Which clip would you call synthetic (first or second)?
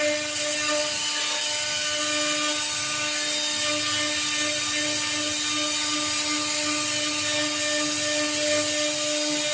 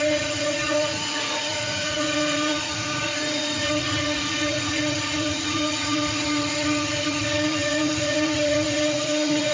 second